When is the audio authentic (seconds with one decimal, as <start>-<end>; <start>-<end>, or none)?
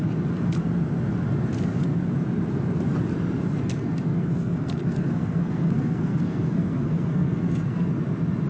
0.0-4.1; 7.9-8.5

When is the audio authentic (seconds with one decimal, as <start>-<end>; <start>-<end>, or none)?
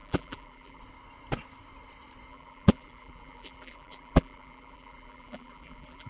0.8-2.3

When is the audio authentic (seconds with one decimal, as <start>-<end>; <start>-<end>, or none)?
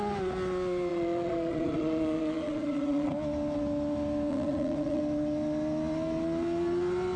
0.0-0.9; 3.1-4.3; 5.0-7.2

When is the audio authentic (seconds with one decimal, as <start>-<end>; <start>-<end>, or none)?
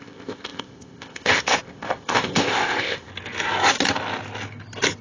3.1-5.0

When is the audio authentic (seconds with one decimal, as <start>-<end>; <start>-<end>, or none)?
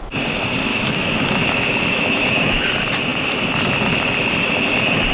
0.0-0.7; 2.7-5.1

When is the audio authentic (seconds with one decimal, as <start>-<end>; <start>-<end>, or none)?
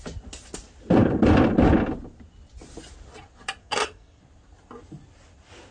0.0-3.6; 4.2-5.7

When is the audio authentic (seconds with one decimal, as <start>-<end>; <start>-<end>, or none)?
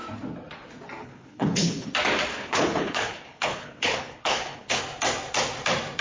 0.0-1.0; 1.9-2.3; 4.8-6.0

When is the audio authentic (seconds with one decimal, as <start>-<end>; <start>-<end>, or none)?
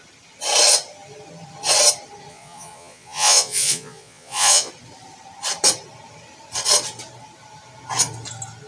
0.0-2.3; 4.7-8.7